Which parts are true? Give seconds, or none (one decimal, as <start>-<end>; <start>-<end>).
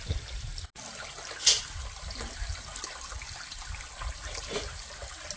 0.0-5.4